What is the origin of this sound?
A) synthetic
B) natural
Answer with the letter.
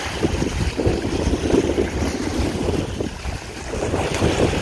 B